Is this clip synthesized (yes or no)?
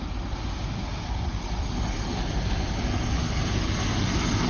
no